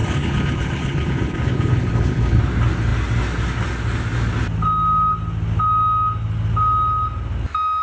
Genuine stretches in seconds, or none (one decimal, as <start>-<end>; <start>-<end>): 2.4-7.8